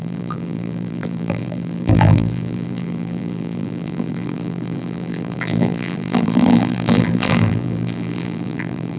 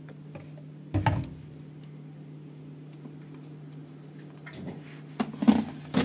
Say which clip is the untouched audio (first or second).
second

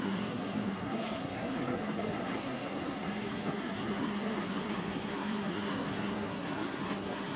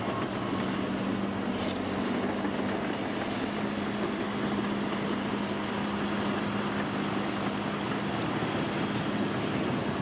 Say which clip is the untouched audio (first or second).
second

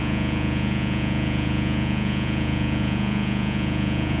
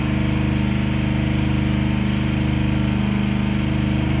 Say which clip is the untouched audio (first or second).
second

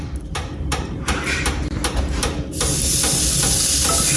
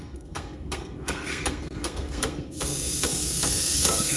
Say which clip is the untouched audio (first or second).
first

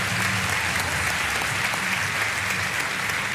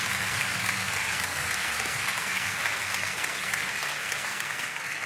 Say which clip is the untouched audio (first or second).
first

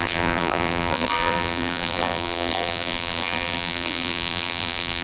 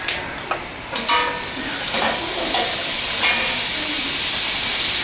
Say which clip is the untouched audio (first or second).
second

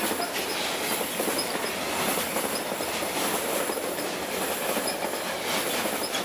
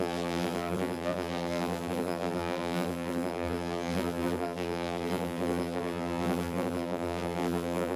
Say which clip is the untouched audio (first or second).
first